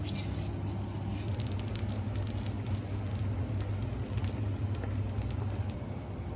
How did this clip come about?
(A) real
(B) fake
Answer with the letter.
A